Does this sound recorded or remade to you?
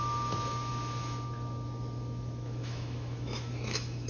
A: remade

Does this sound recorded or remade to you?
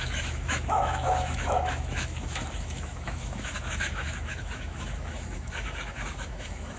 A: remade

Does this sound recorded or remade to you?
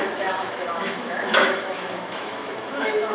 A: remade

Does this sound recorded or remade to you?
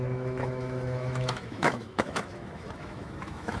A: remade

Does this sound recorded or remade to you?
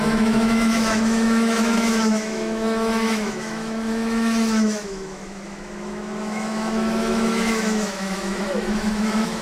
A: remade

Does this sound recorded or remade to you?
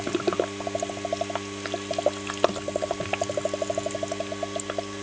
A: recorded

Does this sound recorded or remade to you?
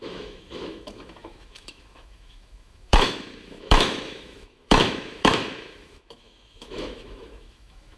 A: remade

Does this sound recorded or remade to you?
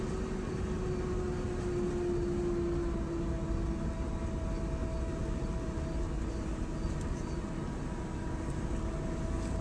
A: recorded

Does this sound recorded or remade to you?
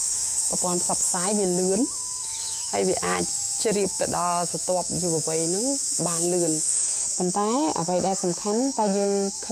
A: remade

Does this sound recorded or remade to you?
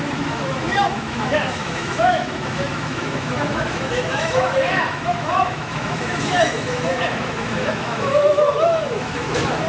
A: remade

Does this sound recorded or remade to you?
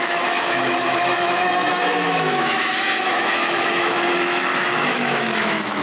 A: remade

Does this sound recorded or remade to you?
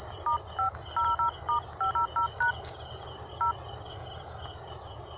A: recorded